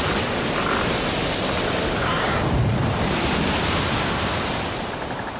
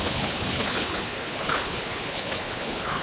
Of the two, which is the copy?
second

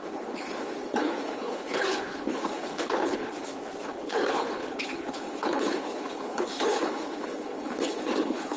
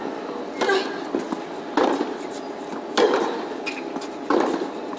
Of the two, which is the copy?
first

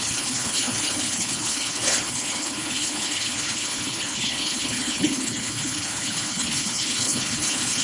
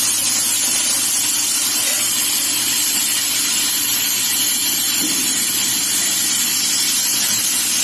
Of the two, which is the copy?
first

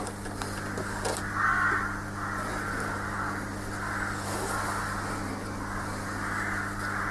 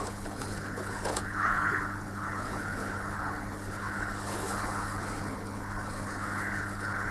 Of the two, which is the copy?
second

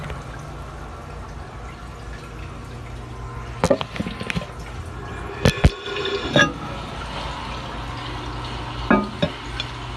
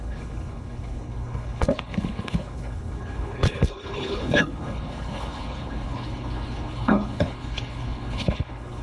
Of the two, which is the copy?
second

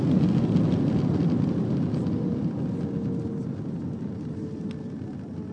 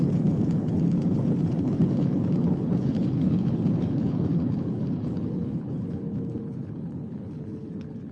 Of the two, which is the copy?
second